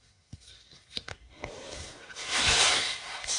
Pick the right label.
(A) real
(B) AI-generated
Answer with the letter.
B